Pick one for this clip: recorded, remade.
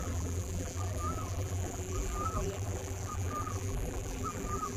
remade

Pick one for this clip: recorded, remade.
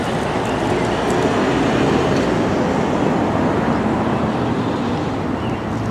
recorded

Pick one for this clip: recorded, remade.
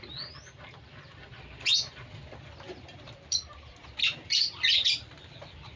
remade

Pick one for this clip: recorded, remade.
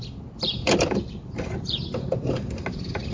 remade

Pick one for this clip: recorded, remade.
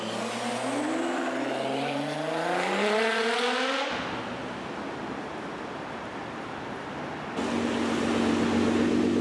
recorded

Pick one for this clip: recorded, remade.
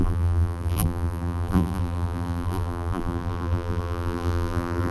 remade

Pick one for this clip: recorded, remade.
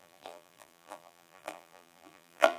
remade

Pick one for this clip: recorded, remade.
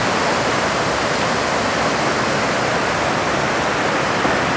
recorded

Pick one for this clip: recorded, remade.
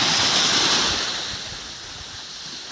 recorded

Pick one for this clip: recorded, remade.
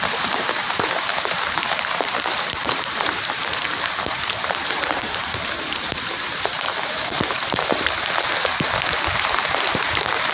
remade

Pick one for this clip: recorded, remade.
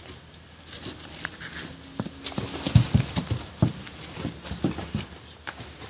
remade